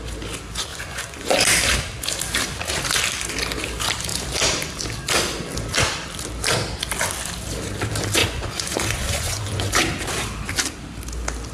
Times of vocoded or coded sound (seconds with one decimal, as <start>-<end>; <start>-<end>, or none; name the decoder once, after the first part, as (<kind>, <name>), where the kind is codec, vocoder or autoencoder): 0.7-1.4 (vocoder, Vocos); 8.2-9.6

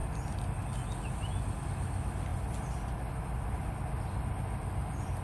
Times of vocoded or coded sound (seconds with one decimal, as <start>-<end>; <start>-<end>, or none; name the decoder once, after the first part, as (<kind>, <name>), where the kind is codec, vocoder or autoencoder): none